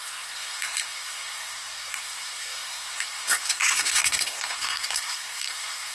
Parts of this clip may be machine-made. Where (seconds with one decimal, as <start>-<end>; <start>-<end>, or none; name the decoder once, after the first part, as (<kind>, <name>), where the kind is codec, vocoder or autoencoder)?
0.0-5.9 (codec, SNAC)